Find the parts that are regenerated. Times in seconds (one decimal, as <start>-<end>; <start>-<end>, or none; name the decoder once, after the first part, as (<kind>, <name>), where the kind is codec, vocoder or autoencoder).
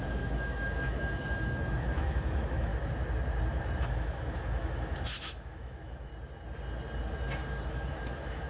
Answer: 0.0-2.7 (autoencoder, DAC-VAE); 3.8-6.1; 7.7-8.5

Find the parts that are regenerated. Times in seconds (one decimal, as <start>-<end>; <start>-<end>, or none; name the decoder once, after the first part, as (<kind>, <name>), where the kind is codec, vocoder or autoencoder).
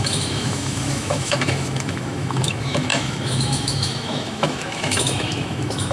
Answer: 0.0-5.9 (autoencoder, DAC-VAE)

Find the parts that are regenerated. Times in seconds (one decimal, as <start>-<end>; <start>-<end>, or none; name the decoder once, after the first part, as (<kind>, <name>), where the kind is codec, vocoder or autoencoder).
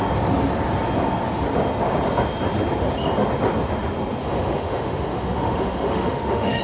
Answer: 4.2-6.6 (autoencoder, DAC-VAE)